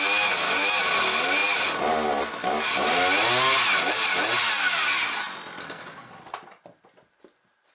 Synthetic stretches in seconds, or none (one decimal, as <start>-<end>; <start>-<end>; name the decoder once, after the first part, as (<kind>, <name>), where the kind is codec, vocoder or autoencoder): 5.6-6.1 (codec, SNAC)